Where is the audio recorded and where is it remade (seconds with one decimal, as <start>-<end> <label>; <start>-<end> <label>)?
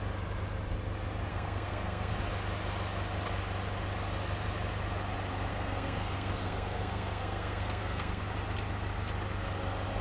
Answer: 0.0-1.3 recorded; 1.3-2.1 remade; 2.1-5.5 recorded; 5.5-8.2 remade; 8.2-10.0 recorded